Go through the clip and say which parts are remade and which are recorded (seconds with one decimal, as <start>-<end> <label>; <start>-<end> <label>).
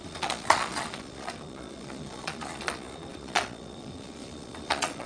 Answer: 0.0-5.1 remade